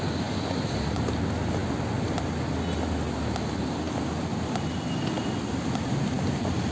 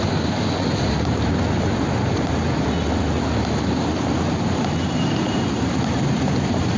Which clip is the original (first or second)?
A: first